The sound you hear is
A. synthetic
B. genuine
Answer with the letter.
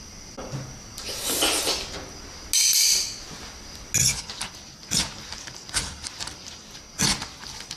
B